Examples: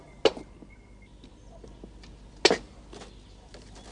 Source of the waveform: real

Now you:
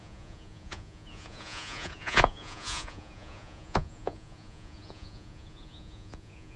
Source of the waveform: fake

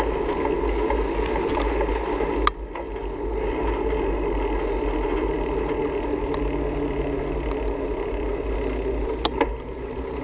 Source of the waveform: real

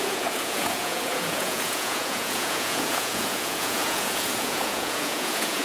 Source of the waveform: fake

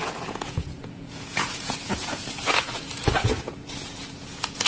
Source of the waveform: fake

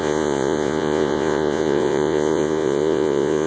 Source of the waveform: fake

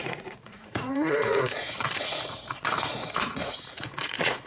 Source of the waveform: fake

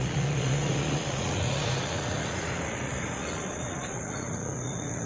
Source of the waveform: fake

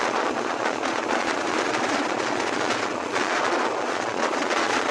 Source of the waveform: fake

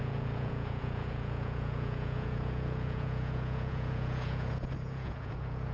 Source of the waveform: fake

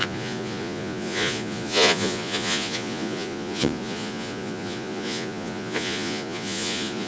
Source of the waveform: fake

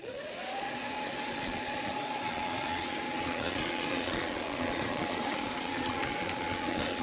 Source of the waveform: fake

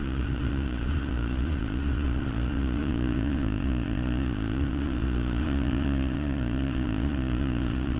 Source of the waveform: fake